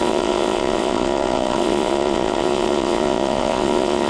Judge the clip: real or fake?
fake